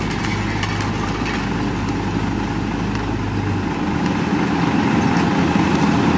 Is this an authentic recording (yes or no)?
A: yes